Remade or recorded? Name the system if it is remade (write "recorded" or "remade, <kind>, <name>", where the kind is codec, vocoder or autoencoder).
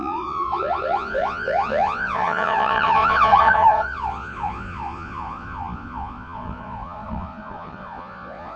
remade, vocoder, Vocos